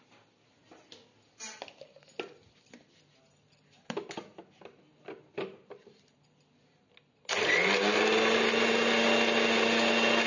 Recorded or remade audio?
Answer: recorded